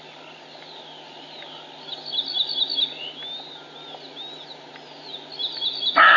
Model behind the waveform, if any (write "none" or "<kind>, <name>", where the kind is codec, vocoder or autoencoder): none